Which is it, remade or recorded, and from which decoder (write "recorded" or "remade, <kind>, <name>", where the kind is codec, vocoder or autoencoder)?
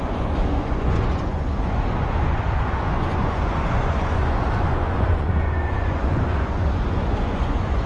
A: remade, vocoder, Vocos